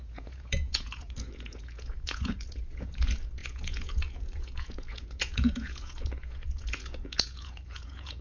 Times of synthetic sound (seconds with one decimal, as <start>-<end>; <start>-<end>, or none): 0.0-8.2